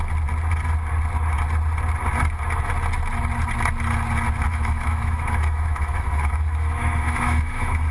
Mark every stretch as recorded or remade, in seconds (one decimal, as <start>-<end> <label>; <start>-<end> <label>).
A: 0.0-4.5 recorded; 4.5-7.9 remade